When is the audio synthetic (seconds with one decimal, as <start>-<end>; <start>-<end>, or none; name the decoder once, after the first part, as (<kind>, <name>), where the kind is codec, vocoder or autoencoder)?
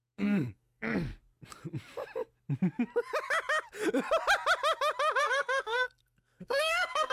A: 0.0-1.1 (codec, SNAC); 5.2-7.1